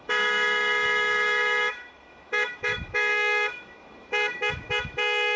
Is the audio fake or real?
fake